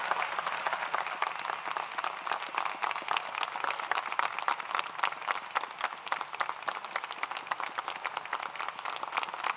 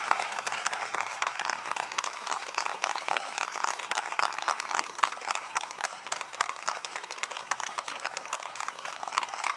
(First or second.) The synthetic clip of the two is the second